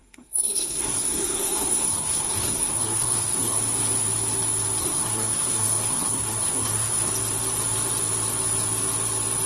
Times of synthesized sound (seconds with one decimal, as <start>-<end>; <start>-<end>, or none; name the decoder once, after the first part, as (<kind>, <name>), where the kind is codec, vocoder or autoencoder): 0.0-3.6 (codec, SNAC); 4.8-7.1